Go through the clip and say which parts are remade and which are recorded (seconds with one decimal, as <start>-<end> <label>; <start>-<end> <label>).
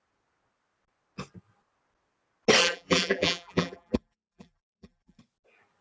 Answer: 0.0-2.6 recorded; 2.6-5.2 remade; 5.2-5.8 recorded